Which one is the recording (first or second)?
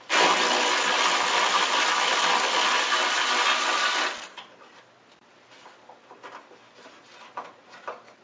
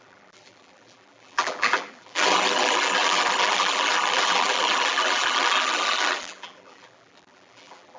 first